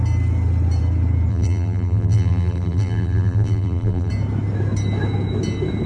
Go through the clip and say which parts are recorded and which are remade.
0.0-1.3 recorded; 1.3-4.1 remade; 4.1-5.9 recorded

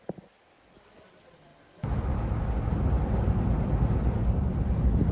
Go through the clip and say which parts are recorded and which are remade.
0.0-5.1 recorded

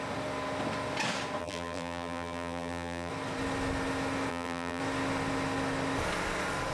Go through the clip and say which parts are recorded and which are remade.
0.0-1.4 recorded; 1.4-3.1 remade; 3.1-4.3 recorded; 4.3-4.8 remade; 4.8-6.7 recorded

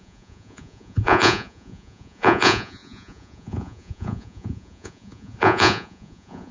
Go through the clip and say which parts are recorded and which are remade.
0.0-6.5 remade

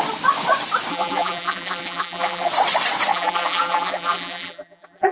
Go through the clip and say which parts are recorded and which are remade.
0.0-0.9 recorded; 0.9-2.5 remade; 2.5-3.1 recorded; 3.1-5.1 remade